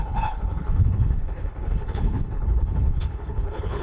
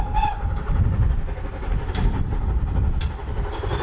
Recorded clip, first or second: second